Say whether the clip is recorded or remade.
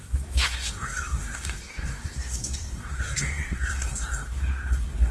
remade